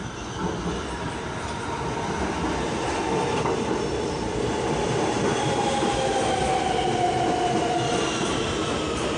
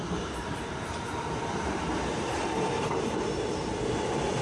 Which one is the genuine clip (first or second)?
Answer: first